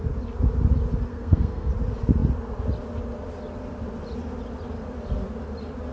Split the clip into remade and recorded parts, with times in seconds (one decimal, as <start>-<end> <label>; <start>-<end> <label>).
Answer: 0.0-1.1 recorded; 1.1-1.7 remade; 1.7-5.9 recorded